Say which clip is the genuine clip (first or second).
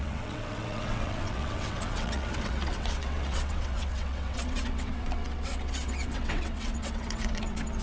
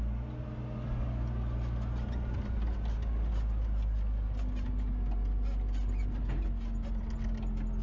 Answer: second